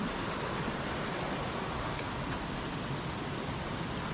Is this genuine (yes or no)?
yes